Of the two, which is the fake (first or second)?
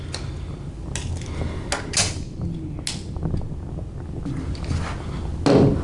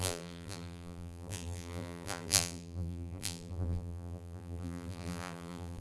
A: second